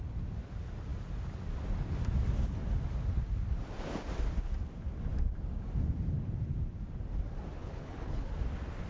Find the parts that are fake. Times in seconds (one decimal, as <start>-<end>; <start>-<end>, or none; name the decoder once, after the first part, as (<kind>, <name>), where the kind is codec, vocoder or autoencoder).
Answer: 7.6-8.3 (codec, HILCodec)